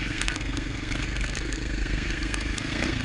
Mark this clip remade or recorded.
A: remade